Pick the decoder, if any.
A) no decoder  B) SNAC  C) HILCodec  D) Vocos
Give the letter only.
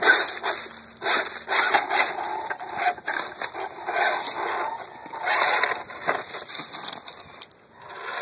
A